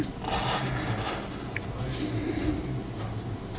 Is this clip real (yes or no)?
yes